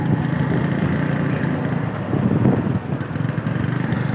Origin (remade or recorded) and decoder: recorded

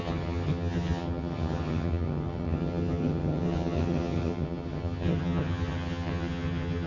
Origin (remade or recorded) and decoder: remade, vocoder, HiFi-GAN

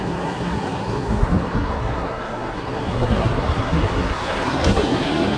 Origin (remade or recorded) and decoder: remade, codec, SNAC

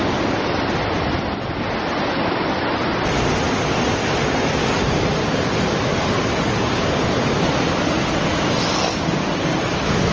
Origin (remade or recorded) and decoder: recorded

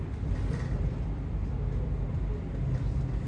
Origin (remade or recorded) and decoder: recorded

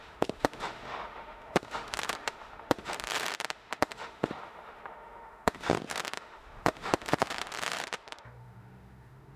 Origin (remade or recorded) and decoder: remade, autoencoder, DAC-VAE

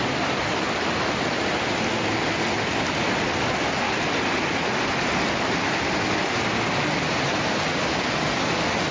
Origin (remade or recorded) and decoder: recorded